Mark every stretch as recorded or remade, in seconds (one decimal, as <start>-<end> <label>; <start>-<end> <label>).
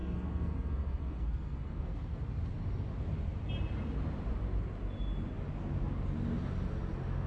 0.0-2.2 remade; 2.2-7.3 recorded